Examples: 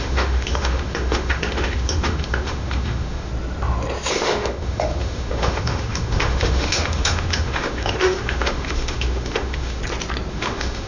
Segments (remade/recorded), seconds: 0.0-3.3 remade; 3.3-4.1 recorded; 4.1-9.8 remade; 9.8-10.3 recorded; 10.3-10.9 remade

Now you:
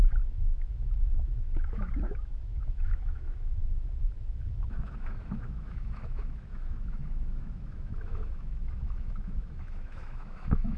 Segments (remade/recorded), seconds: 0.0-10.8 remade

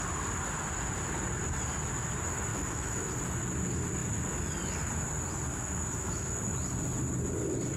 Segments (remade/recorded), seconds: 0.0-2.5 recorded; 2.5-3.1 remade; 3.1-5.5 recorded; 5.5-6.3 remade; 6.3-7.8 recorded

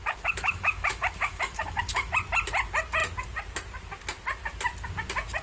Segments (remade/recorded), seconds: 0.0-2.1 remade; 2.1-5.4 recorded

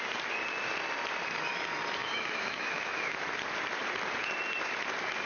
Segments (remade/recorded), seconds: 0.0-2.0 recorded; 2.0-3.3 remade; 3.3-5.3 recorded